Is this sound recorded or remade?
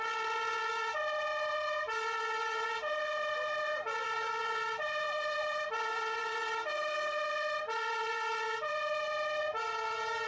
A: recorded